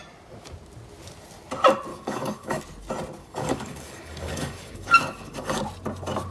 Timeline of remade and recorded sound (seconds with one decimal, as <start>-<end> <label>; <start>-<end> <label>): 0.0-1.9 recorded; 1.9-2.6 remade; 2.6-3.2 recorded; 3.2-5.6 remade; 5.6-6.3 recorded